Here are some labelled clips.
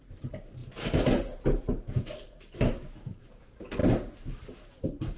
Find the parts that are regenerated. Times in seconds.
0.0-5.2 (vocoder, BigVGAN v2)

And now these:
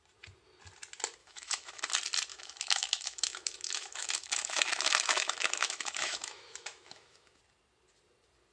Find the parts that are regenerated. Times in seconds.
1.2-1.8 (autoencoder, DAC-VAE); 2.3-7.4

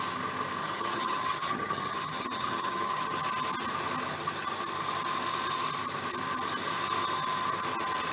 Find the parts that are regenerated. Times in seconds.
0.6-3.2 (vocoder, HiFi-GAN)

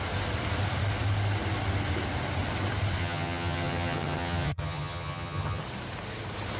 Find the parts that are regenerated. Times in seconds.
3.0-5.6 (vocoder, HiFi-GAN)

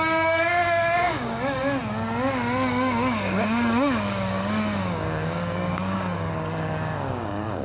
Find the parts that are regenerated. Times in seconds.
0.0-1.6 (codec, DAC); 2.7-7.6

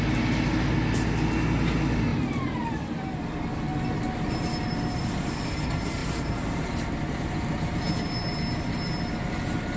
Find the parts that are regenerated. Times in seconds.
2.1-2.7 (vocoder, BigVGAN v2); 6.0-7.9